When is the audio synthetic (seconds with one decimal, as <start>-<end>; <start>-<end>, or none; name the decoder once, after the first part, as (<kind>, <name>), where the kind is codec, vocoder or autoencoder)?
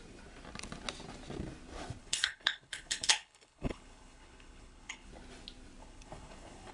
2.0-5.1 (codec, HILCodec); 5.8-6.7